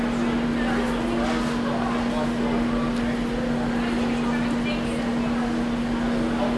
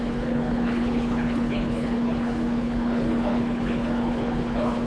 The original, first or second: first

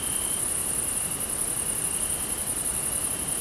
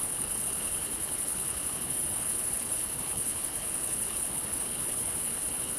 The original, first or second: first